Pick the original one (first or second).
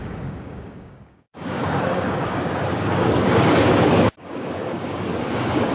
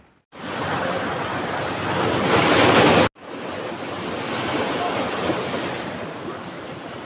second